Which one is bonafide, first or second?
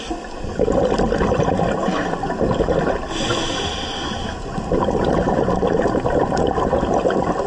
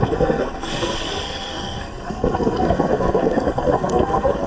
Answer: first